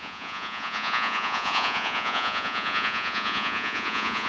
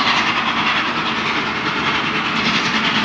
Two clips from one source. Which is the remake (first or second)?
first